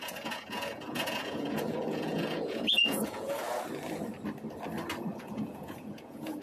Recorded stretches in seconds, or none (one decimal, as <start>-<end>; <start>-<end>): 3.4-5.2

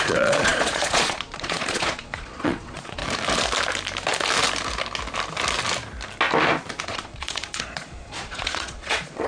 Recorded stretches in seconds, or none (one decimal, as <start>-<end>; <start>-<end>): 3.0-6.8

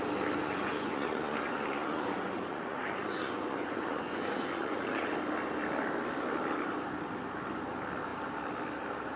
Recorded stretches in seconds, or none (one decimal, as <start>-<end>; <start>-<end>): 0.0-0.4; 5.1-9.2

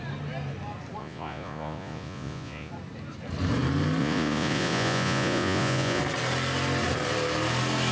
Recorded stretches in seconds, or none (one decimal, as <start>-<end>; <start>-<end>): 0.0-1.0; 2.7-4.0; 6.0-7.9

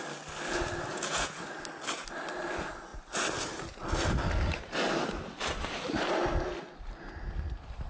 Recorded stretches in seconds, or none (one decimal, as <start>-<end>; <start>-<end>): 0.0-0.9; 1.4-7.9

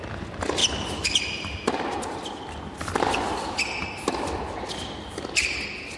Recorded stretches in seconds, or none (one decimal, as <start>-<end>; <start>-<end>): 0.0-6.0